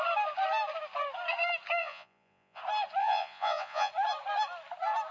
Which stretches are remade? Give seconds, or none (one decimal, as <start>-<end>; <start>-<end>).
1.8-2.6; 3.0-3.9